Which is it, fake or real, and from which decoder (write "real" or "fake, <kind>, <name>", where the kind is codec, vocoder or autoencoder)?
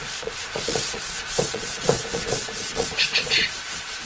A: fake, vocoder, Vocos